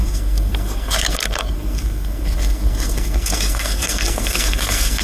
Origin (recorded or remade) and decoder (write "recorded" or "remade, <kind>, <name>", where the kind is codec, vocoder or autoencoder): remade, codec, SNAC